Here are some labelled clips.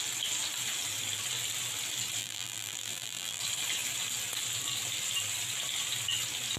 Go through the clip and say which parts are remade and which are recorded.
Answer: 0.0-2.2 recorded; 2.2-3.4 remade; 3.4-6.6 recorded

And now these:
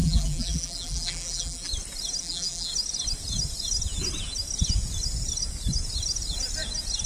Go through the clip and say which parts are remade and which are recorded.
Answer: 0.0-1.7 remade; 1.7-2.2 recorded; 2.2-2.7 remade; 2.7-7.1 recorded